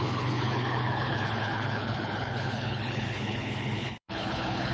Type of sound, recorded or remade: remade